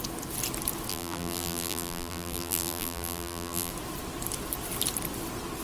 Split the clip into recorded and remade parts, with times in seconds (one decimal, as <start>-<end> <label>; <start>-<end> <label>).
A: 0.0-0.9 recorded; 0.9-3.7 remade; 3.7-5.6 recorded